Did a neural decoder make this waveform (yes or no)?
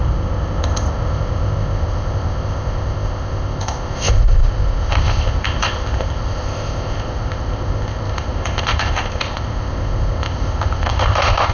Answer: yes